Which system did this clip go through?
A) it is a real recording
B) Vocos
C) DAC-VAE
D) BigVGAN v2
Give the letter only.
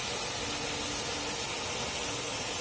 A